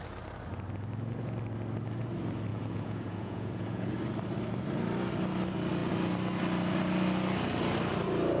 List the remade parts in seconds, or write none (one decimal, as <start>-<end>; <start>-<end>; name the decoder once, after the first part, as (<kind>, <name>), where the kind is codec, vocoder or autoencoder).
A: 2.5-3.9 (vocoder, Vocos)